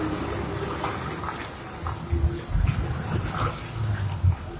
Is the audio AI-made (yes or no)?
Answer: no